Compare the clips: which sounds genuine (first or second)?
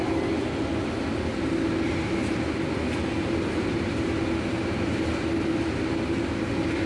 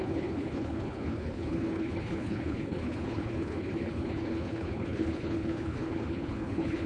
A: first